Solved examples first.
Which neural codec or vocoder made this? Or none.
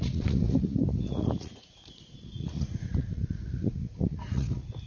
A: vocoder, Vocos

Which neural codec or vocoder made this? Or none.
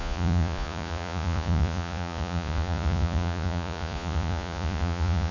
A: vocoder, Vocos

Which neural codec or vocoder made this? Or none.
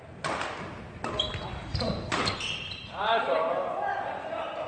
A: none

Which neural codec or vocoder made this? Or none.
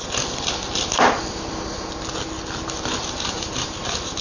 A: none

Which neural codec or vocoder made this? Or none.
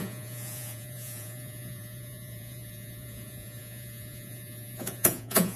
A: vocoder, Vocos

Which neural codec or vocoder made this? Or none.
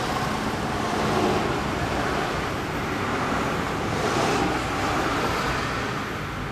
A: none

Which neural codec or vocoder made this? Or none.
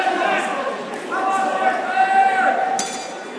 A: none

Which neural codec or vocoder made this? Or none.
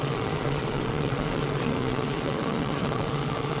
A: vocoder, Vocos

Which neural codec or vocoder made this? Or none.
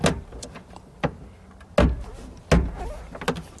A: none